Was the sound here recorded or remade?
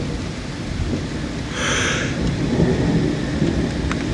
recorded